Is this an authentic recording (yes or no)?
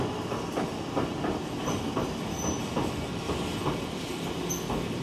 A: yes